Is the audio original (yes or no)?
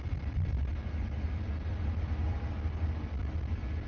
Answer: yes